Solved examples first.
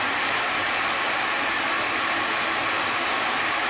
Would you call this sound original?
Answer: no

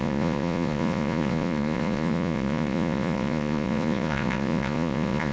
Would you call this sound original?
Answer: no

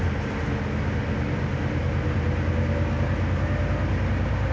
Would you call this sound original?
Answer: yes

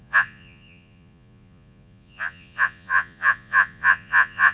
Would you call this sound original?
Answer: no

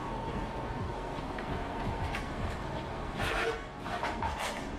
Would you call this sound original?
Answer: no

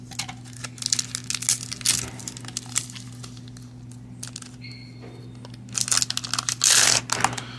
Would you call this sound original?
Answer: yes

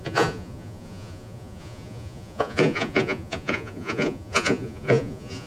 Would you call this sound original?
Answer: no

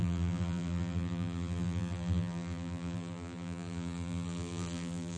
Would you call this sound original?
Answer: no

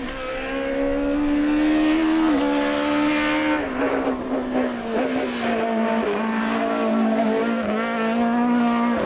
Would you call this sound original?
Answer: yes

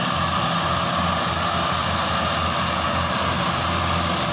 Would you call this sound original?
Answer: yes